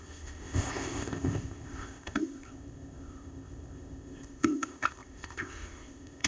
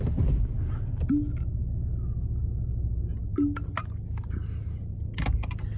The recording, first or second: second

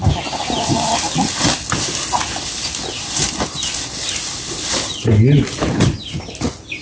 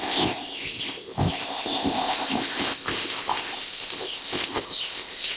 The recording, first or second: first